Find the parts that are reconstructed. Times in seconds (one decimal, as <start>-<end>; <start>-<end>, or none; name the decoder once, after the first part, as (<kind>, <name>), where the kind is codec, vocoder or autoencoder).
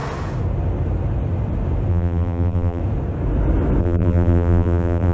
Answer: 1.9-2.8 (vocoder, BigVGAN v2); 3.8-5.1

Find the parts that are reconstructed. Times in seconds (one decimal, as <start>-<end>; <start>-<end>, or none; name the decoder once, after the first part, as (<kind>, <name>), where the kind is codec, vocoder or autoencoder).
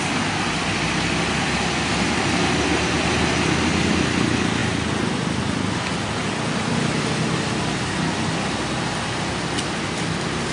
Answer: none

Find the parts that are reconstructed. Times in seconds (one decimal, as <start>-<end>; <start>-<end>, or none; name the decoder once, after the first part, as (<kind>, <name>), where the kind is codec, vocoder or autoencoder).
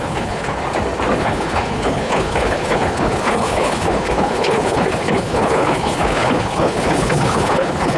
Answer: 0.0-0.6 (codec, HILCodec); 1.2-8.0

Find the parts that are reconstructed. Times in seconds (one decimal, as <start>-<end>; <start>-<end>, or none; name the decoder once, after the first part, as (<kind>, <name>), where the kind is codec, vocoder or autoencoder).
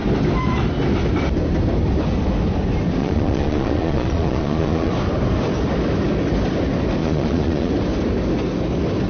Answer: 3.0-4.9 (vocoder, Vocos); 7.0-7.7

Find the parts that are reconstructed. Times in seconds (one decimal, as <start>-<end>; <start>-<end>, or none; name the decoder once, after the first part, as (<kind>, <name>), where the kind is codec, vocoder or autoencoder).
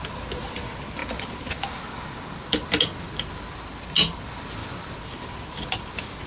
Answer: none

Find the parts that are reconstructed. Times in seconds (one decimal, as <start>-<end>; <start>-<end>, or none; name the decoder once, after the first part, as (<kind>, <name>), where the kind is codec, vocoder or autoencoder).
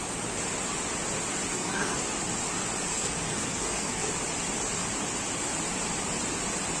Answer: 1.5-2.0 (codec, SNAC); 2.9-4.1